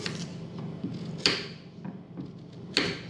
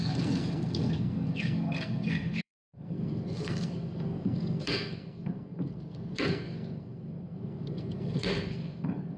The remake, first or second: second